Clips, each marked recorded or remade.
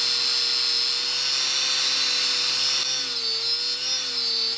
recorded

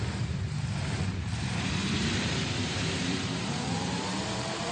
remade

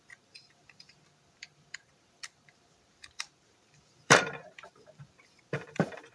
remade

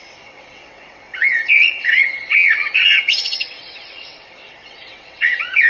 remade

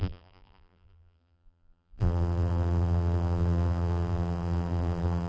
remade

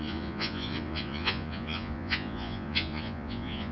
remade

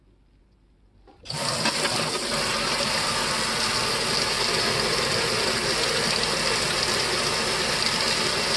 recorded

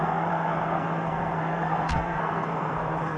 remade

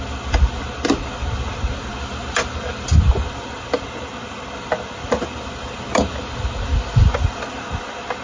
recorded